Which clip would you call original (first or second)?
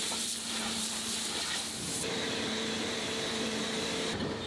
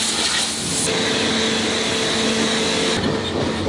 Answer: second